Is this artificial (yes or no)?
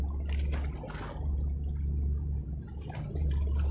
no